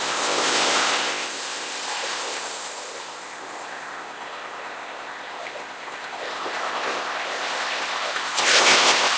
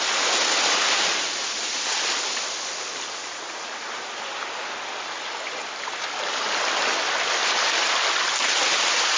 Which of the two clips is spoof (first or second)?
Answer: first